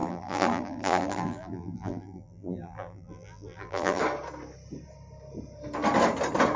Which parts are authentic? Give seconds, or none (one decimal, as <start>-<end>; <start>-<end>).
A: 4.0-6.6